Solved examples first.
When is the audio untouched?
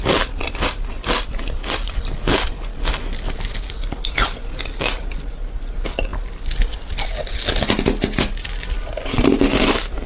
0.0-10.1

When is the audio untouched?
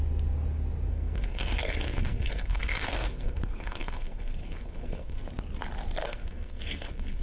0.0-0.9; 5.2-6.0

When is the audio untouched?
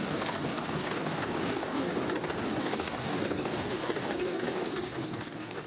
1.9-2.6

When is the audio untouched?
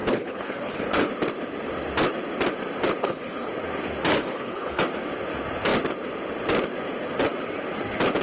1.1-3.0; 3.5-4.1; 4.8-8.2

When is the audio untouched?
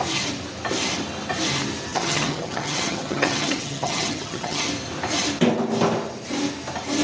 0.0-1.9; 4.7-7.0